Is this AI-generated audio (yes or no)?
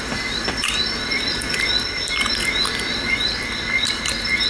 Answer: yes